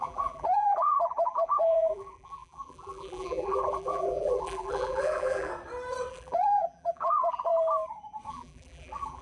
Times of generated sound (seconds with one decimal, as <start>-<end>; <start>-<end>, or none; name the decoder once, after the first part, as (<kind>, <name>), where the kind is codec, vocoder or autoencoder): 0.0-5.5 (vocoder, BigVGAN v2); 6.1-7.5; 8.3-9.2